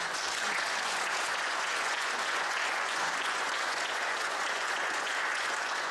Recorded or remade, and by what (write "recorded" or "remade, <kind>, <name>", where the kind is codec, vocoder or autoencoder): remade, vocoder, Vocos